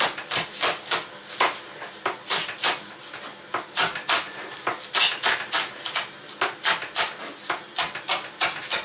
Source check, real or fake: real